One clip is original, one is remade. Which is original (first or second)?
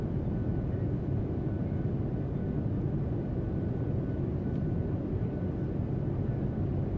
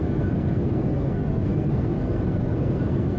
first